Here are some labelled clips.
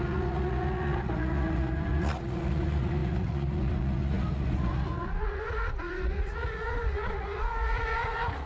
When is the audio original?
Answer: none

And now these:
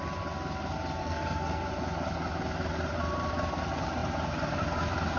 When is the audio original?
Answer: 0.0-1.0; 1.7-5.2

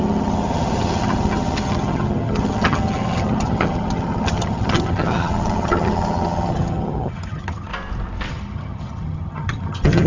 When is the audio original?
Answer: 7.7-8.3

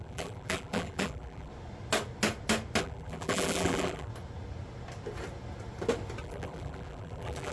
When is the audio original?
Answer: 1.5-2.8; 4.1-6.2

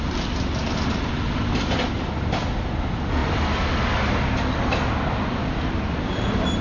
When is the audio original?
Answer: 0.0-6.6

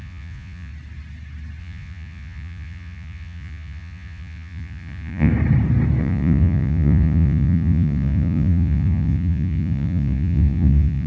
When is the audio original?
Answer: 0.7-1.6; 5.3-6.0

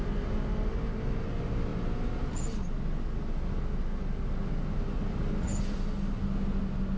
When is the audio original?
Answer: 0.0-7.0

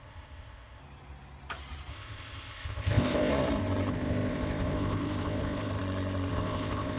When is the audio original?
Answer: 0.8-1.9; 3.3-3.9; 5.8-6.3